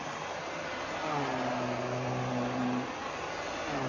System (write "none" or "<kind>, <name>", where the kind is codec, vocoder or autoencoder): none